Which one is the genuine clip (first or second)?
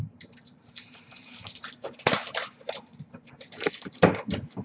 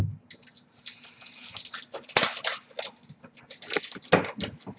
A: second